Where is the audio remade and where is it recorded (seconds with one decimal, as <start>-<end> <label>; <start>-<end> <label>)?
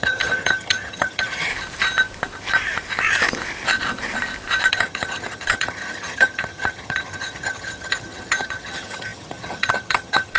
0.0-1.5 remade; 1.5-4.7 recorded; 4.7-10.4 remade